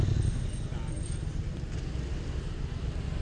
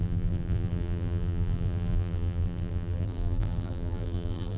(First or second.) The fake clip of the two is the second